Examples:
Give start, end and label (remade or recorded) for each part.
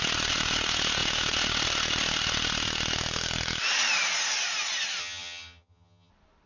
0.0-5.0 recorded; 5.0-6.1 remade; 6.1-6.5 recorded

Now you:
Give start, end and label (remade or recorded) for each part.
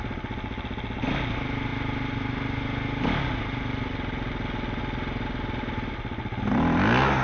0.0-7.2 recorded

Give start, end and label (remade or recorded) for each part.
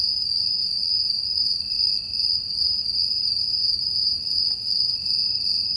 0.0-0.8 recorded; 0.8-2.6 remade; 2.6-5.8 recorded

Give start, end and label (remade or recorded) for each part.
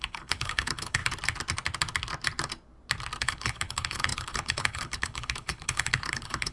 0.0-1.0 remade; 1.0-3.2 recorded; 3.2-6.5 remade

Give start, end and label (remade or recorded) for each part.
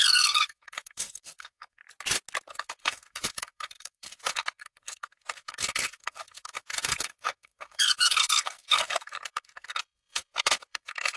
0.0-1.8 remade; 1.8-2.5 recorded; 2.5-11.2 remade